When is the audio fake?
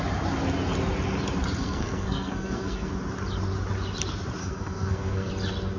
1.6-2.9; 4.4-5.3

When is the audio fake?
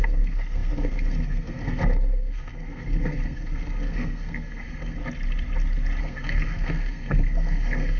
0.0-5.0; 6.0-8.0